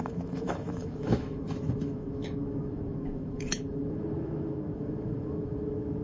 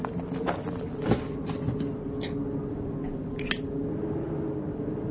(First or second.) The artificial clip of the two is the first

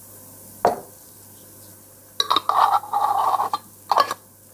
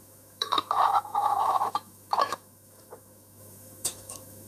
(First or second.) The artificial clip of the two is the second